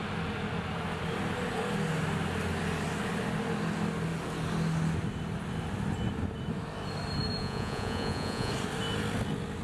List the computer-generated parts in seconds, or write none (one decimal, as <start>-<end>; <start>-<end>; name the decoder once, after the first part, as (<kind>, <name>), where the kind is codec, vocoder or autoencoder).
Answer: 7.4-8.5 (vocoder, Vocos)